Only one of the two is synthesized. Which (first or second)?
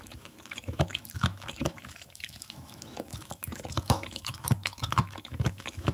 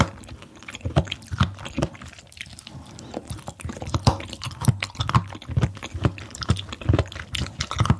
first